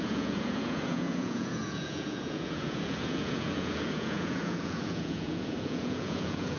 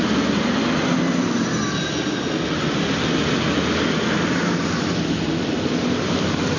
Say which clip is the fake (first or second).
first